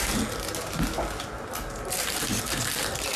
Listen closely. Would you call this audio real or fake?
real